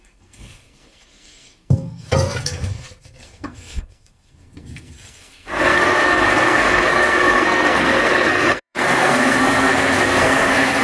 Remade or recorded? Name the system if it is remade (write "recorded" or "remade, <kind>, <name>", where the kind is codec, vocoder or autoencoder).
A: remade, codec, SNAC